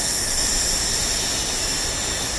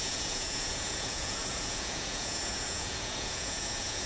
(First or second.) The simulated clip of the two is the second